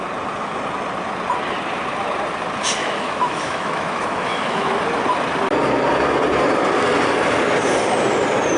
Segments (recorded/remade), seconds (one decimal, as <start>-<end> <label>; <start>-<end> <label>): 0.0-2.8 recorded; 2.8-4.7 remade; 4.7-8.6 recorded